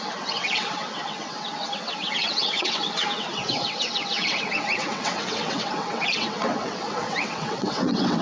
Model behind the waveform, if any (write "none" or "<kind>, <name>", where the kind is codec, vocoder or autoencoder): vocoder, WaveNeXt